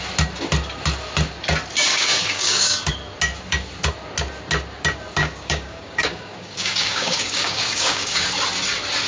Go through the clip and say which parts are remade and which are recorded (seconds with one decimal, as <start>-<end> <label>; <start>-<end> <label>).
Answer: 0.0-1.9 recorded; 1.9-2.9 remade; 2.9-5.2 recorded; 5.2-8.3 remade; 8.3-9.1 recorded